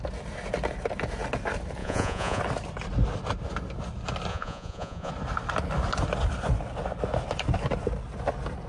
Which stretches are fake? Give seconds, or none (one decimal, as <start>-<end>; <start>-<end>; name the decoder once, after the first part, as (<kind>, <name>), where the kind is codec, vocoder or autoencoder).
1.8-2.4 (vocoder, Vocos); 4.3-5.1